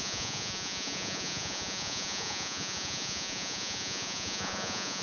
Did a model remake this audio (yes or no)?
yes